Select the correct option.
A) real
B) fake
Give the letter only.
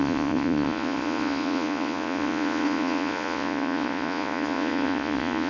B